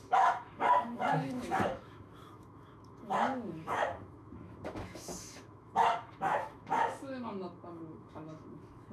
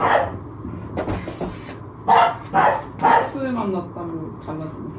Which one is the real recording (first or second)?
second